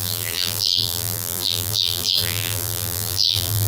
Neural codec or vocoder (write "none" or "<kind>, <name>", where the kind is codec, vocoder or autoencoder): vocoder, BigVGAN v2